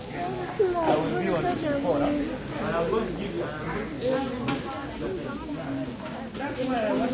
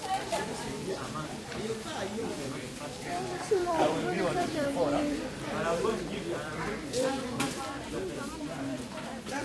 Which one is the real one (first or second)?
first